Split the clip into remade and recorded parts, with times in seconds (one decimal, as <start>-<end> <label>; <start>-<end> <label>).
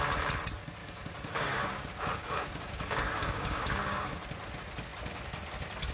0.0-0.8 recorded; 0.8-4.2 remade; 4.2-5.9 recorded